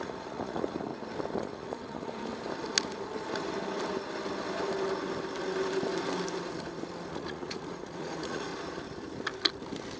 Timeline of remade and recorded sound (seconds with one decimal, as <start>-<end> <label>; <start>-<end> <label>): 0.0-0.9 remade; 0.9-1.4 recorded; 1.4-2.3 remade; 2.3-7.1 recorded; 7.1-8.5 remade; 8.5-10.0 recorded